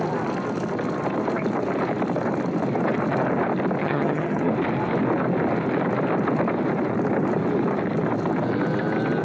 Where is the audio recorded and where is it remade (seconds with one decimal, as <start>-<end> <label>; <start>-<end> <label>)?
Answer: 0.0-3.8 recorded; 3.8-4.5 remade; 4.5-9.2 recorded